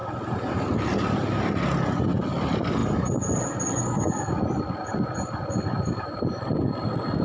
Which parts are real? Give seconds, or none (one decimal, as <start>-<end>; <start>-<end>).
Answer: 0.0-7.2